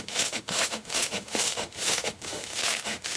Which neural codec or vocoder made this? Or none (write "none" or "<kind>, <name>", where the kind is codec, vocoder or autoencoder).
autoencoder, DAC-VAE